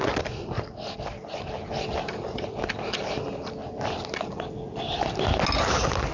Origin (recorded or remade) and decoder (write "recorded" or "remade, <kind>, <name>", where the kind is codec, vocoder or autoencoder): recorded